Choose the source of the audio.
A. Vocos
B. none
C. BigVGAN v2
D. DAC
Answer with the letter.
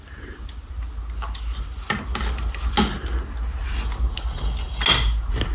B